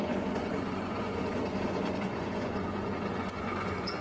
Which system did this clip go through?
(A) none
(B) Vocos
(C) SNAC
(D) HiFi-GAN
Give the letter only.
B